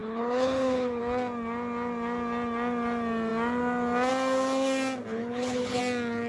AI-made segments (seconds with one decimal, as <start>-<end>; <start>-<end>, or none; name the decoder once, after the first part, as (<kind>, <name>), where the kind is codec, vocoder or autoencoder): 0.0-1.0 (codec, HILCodec); 5.1-5.8